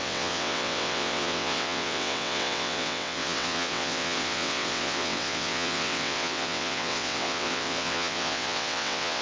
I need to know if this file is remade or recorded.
remade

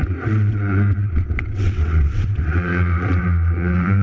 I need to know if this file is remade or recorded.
remade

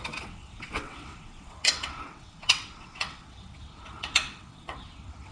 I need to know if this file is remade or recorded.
remade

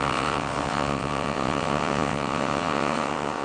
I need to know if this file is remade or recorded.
remade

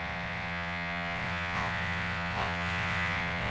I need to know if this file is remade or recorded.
remade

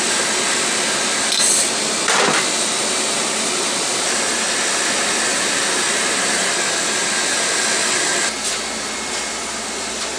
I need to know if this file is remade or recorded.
recorded